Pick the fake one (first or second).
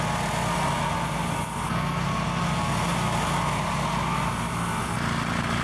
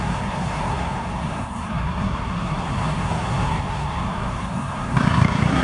second